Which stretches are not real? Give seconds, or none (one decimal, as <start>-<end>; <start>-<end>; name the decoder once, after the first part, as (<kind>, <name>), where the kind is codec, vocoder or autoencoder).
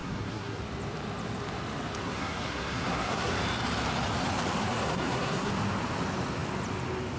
0.0-0.6 (codec, SNAC); 2.0-3.3; 4.6-5.5